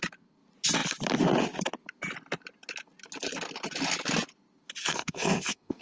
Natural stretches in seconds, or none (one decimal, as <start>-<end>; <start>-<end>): 0.0-4.8

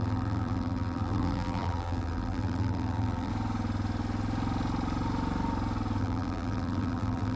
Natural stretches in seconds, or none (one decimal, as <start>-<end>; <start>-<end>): 3.3-6.0

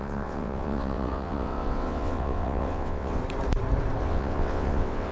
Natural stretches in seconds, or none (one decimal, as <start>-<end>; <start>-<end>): 3.2-4.0

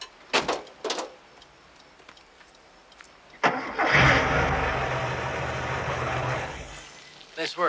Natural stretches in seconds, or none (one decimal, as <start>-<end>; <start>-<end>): 0.0-5.8; 6.7-7.7

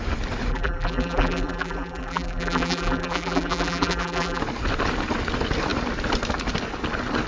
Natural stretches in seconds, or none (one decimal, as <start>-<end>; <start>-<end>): 0.0-0.5; 4.4-7.3

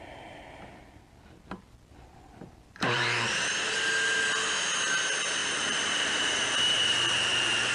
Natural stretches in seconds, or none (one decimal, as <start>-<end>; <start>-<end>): 0.0-2.7; 3.5-5.4

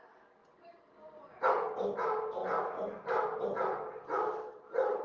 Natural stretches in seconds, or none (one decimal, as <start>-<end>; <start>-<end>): 0.0-5.0

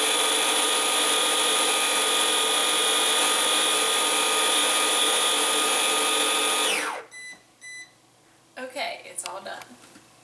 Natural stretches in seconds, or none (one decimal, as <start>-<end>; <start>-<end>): 0.0-10.2